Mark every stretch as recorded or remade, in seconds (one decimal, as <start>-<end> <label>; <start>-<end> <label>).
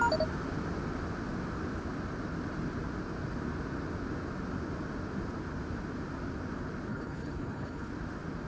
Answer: 0.0-6.9 recorded; 6.9-7.9 remade; 7.9-8.5 recorded